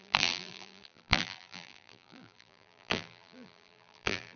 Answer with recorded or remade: remade